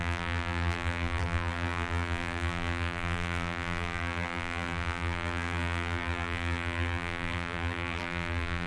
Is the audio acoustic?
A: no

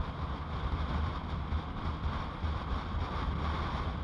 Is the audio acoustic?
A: yes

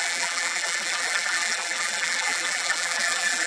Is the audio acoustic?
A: no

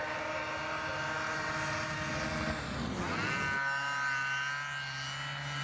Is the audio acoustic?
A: yes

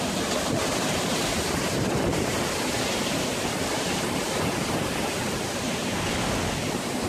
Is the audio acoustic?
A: yes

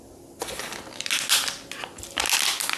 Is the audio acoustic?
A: yes